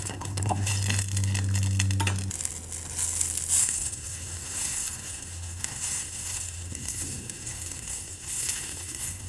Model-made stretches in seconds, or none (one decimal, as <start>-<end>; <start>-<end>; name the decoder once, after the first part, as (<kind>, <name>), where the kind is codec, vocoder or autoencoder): 0.0-0.7 (codec, SNAC); 3.6-9.3